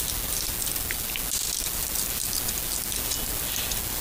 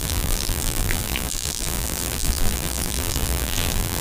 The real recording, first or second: first